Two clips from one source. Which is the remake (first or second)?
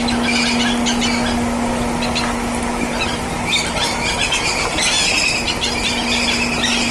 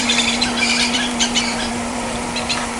second